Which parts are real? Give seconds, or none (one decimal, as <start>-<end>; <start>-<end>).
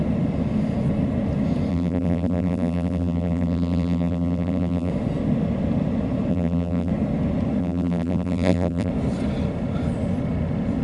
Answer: 0.0-1.7; 4.9-6.3; 6.9-7.6; 8.9-10.8